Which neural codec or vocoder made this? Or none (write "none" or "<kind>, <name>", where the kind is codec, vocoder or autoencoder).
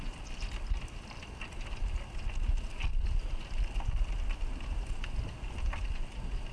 none